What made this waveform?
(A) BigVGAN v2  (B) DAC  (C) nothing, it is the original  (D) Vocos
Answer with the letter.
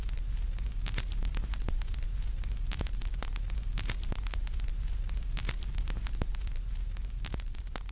A